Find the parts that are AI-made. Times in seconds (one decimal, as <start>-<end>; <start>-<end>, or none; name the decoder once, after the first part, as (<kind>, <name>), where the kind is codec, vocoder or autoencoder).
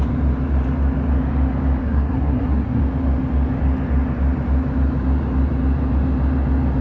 1.8-2.8 (codec, SNAC)